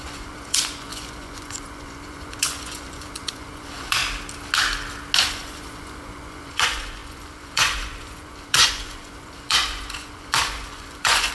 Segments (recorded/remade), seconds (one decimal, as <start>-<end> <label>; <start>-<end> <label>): 0.0-4.0 remade; 4.0-5.3 recorded; 5.3-11.3 remade